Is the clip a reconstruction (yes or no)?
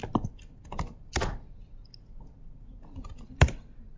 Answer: no